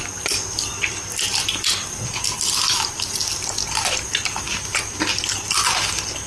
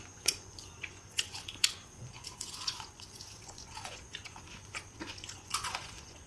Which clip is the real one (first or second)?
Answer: first